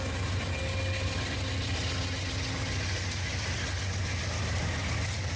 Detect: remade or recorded recorded